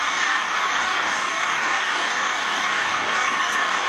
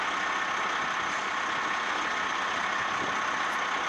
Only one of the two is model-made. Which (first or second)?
first